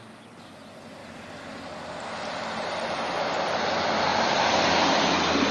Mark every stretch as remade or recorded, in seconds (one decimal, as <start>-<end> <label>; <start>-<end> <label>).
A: 0.0-5.5 recorded